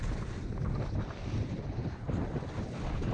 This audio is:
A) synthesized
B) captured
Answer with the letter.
A